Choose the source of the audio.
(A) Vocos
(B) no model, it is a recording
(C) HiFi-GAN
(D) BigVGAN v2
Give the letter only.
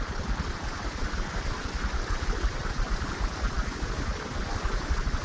B